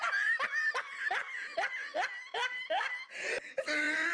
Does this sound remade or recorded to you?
recorded